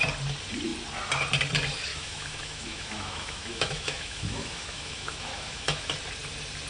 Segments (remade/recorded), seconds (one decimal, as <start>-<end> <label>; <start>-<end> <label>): 0.0-1.9 recorded; 1.9-5.9 remade; 5.9-6.7 recorded